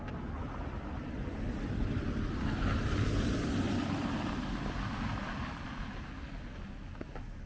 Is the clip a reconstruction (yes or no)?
no